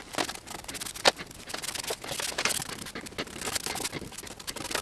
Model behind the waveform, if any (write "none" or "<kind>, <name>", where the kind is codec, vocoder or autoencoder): none